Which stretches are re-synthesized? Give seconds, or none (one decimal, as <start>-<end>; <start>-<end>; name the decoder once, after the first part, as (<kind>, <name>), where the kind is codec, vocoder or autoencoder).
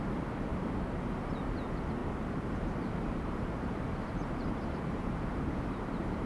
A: 0.5-1.1 (vocoder, BigVGAN v2); 2.0-5.8